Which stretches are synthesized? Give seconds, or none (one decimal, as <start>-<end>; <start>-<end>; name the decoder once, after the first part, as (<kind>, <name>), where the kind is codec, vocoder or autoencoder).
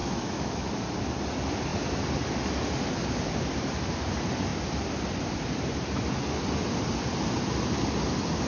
0.0-0.7 (autoencoder, DAC-VAE)